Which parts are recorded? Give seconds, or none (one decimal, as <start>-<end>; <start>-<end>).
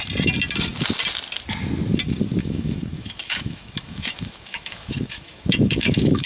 0.0-2.4